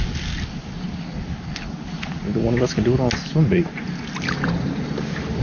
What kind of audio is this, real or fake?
real